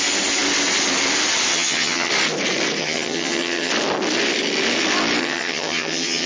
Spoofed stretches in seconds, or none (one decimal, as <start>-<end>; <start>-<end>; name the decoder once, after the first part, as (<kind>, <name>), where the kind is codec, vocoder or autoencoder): 1.5-2.1 (vocoder, HiFi-GAN); 2.8-3.7; 5.2-6.3